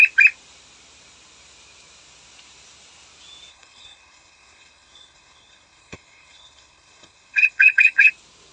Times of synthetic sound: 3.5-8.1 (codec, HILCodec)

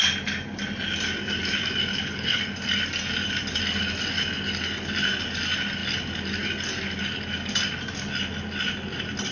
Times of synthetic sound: 1.9-2.4 (codec, HILCodec)

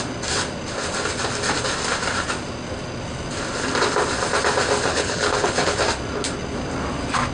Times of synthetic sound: 4.9-5.8 (codec, HILCodec)

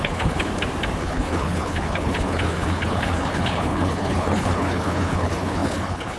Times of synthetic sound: 0.0-0.5 (codec, HILCodec); 1.0-6.2

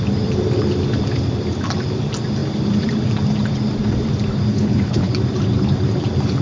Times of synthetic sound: 4.5-5.1 (codec, HILCodec)

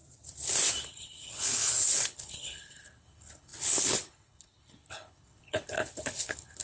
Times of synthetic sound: 0.8-6.6 (codec, HILCodec)

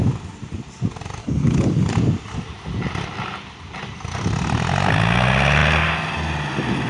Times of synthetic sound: 1.2-1.9 (codec, HILCodec)

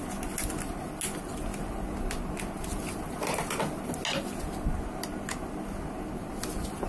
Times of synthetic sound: none